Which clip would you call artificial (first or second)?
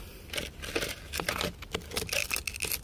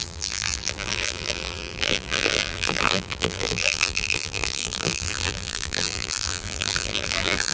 second